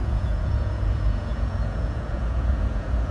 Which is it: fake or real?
fake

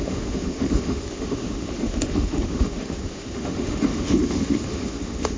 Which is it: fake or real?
fake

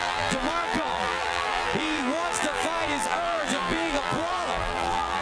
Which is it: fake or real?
fake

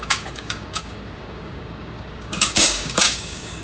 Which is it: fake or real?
fake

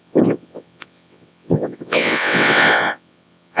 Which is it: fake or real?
fake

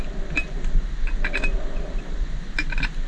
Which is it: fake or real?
real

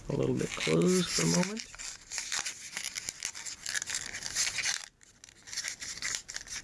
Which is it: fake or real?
real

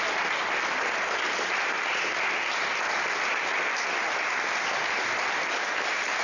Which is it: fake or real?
real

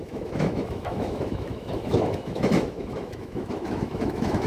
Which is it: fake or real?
fake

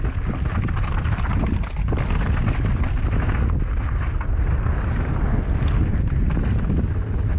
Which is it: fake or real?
real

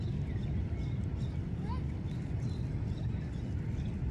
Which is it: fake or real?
real